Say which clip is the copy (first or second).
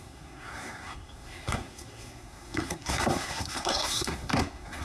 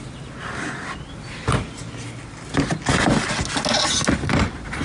first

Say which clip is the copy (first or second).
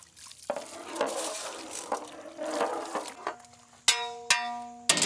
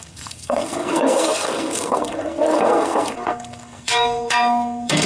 second